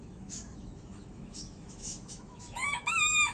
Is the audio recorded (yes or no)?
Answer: no